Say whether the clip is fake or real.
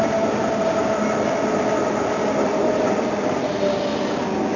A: real